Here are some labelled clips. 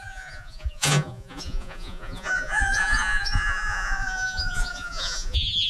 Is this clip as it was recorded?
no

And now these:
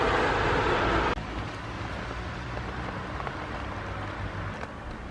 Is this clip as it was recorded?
yes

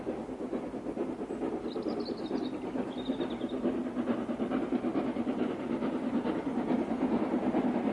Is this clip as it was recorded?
yes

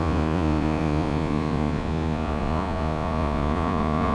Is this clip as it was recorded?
no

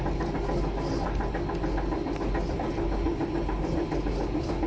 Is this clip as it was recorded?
yes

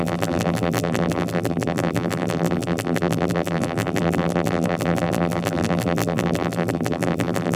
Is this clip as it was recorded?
no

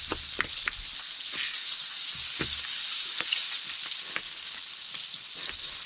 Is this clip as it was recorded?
yes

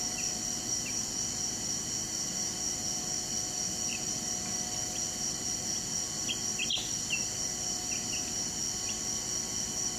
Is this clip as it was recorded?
yes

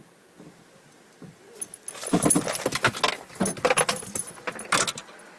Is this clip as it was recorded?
yes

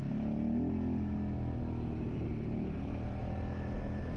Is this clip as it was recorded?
yes